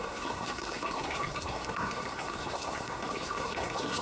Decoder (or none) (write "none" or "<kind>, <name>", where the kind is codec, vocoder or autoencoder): codec, SNAC